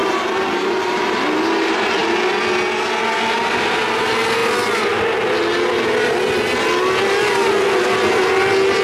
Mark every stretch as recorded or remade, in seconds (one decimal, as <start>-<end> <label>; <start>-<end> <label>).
0.0-1.1 remade; 1.1-8.8 recorded